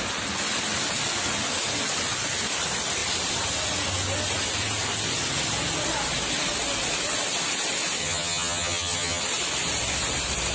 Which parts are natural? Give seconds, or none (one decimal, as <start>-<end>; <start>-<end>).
0.0-8.0; 9.2-10.5